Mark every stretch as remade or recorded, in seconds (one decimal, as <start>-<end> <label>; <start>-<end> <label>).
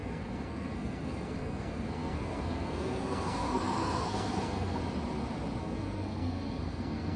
0.0-4.8 remade; 4.8-5.6 recorded; 5.6-7.2 remade